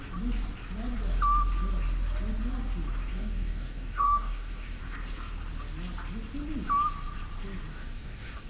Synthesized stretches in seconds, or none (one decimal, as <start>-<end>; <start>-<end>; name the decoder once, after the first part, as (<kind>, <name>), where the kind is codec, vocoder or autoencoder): 3.1-4.8 (codec, DAC); 7.7-8.5